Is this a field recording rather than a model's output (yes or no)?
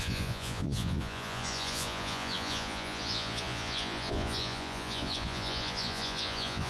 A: no